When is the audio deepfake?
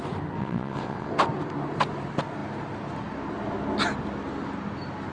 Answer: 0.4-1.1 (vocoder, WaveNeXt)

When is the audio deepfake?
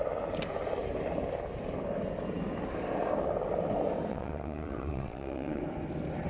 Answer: 4.1-5.6 (vocoder, WaveNeXt)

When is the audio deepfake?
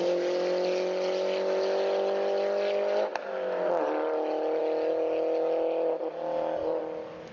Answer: none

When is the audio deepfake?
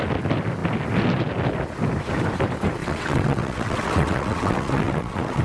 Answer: 2.8-5.4 (vocoder, WaveNeXt)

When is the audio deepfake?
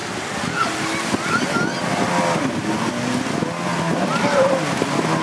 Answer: none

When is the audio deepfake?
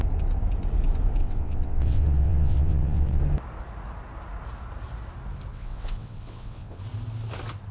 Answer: 1.2-3.2 (vocoder, WaveNeXt); 5.5-6.8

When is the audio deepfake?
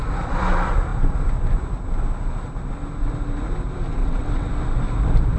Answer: 4.0-4.5 (vocoder, WaveNeXt)